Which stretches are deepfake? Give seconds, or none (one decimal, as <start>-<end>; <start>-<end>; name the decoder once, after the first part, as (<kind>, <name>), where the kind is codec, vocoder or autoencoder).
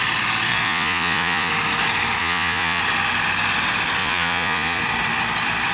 0.5-1.5 (vocoder, Vocos); 2.2-2.8; 4.0-4.8